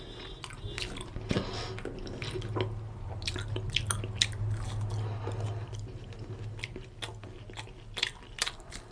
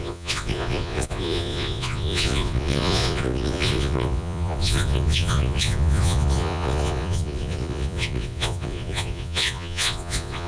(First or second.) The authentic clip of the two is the first